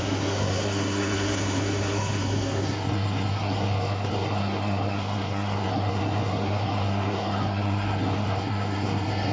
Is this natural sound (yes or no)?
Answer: no